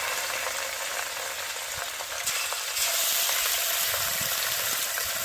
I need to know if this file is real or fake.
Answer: real